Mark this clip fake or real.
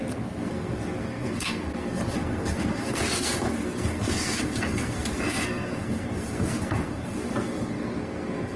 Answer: fake